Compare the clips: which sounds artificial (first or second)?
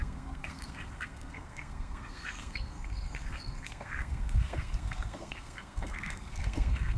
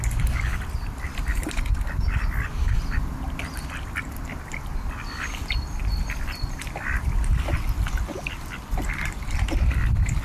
first